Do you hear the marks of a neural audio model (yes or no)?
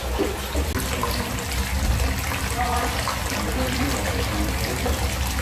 no